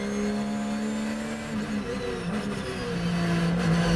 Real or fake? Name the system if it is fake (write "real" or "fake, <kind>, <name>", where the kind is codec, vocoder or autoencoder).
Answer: real